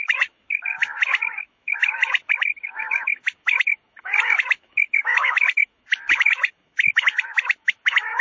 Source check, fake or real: fake